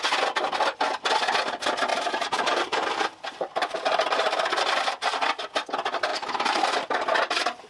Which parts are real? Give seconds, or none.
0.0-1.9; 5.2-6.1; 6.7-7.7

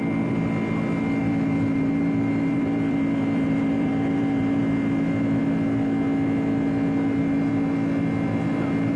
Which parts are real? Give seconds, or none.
0.0-1.2; 4.6-9.0

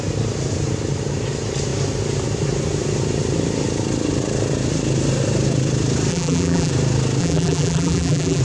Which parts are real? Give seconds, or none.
0.0-6.1; 6.7-7.2

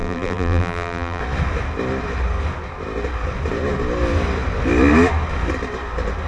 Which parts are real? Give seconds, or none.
1.2-6.3

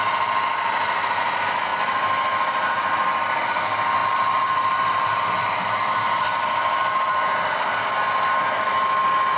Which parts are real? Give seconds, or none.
0.0-1.7; 3.4-4.0; 7.7-9.4

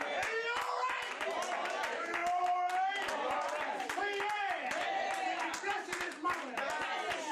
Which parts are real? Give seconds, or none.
0.0-7.3

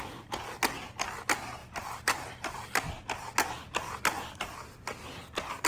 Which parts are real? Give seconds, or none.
0.0-1.6; 2.9-3.8; 4.5-5.7